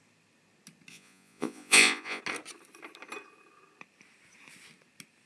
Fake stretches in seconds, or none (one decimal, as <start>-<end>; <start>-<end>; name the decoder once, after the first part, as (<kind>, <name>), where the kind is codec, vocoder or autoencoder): 0.9-2.2 (vocoder, Vocos)